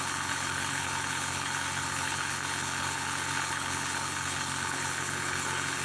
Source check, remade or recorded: remade